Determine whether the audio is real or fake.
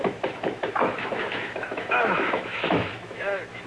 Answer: fake